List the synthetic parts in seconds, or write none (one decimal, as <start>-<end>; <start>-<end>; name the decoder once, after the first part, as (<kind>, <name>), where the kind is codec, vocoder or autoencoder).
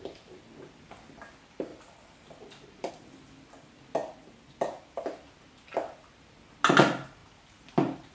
1.7-2.9 (vocoder, BigVGAN v2)